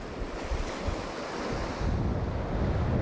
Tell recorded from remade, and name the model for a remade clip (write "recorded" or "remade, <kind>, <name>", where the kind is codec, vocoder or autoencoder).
recorded